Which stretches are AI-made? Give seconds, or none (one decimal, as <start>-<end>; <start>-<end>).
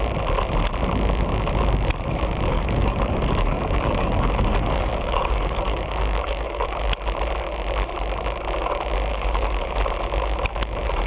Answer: 2.5-6.8; 9.1-9.8